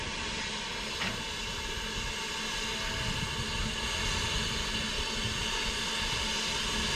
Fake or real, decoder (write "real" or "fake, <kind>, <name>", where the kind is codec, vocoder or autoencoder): real